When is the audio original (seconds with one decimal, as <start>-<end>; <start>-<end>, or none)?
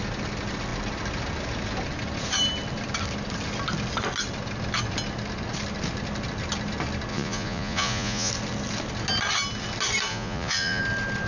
0.0-7.1; 8.3-10.1; 10.8-11.3